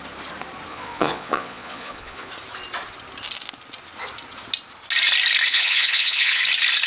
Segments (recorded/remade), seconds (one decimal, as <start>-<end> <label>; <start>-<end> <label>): 0.0-0.7 recorded; 0.7-2.3 remade; 2.3-5.5 recorded; 5.5-6.4 remade; 6.4-6.9 recorded